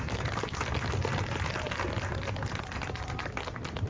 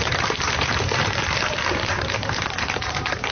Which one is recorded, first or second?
first